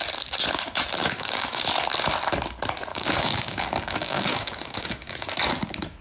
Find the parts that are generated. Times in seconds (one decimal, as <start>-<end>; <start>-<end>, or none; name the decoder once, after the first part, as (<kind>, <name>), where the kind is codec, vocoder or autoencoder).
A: 1.0-1.6 (codec, DAC); 2.9-5.3